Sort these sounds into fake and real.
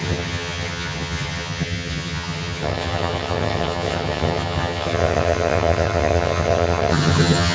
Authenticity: fake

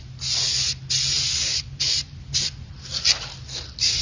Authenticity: real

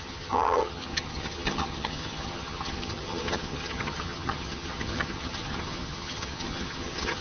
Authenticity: fake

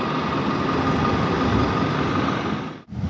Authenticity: real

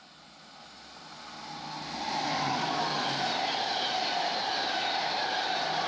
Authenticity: real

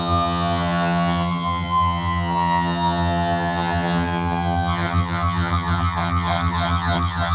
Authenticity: fake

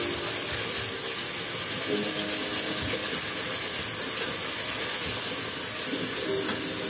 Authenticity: real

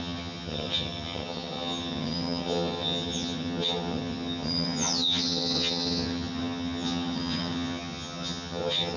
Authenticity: fake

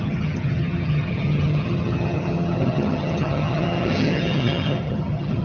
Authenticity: fake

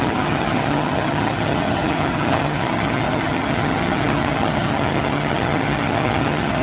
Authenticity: fake